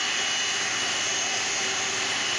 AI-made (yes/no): no